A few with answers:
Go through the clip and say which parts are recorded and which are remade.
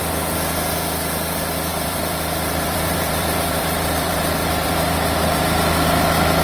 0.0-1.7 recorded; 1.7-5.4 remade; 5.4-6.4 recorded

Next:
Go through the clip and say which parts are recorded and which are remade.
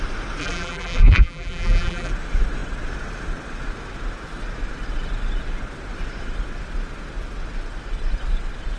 0.0-0.4 recorded; 0.4-2.1 remade; 2.1-8.8 recorded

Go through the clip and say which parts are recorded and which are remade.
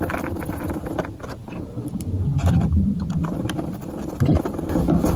0.0-5.2 recorded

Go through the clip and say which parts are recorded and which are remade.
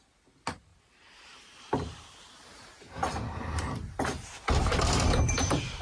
0.0-0.7 recorded; 0.7-3.7 remade; 3.7-4.6 recorded; 4.6-5.8 remade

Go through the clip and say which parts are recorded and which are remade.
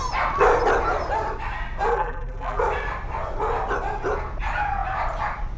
0.0-1.9 recorded; 1.9-2.6 remade; 2.6-5.6 recorded